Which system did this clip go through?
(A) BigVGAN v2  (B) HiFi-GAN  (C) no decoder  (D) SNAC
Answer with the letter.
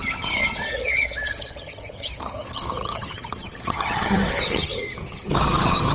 B